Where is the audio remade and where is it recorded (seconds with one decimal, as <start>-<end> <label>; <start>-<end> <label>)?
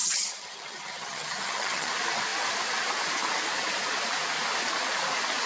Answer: 0.0-1.9 remade; 1.9-5.5 recorded